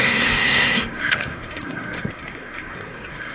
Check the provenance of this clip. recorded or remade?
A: remade